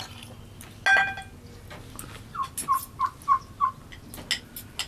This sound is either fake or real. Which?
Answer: real